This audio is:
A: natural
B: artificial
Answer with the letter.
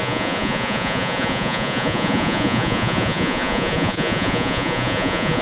B